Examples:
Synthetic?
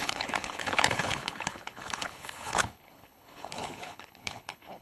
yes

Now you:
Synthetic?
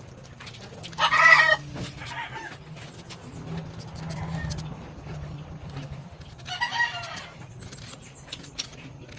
no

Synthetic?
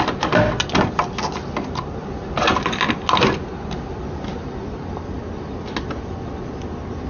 no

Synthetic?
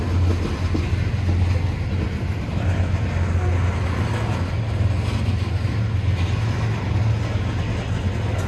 no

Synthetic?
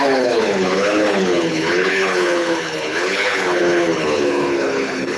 yes